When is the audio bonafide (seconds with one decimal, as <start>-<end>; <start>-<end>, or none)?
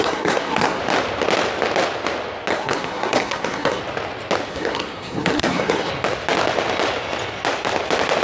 0.8-2.5; 3.8-4.5; 5.9-8.2